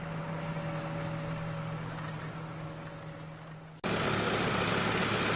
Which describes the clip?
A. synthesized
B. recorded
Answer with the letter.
B